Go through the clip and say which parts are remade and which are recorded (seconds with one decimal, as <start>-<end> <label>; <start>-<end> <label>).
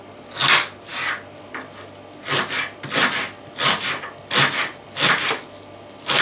0.0-6.2 recorded